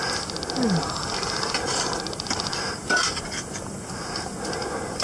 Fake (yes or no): no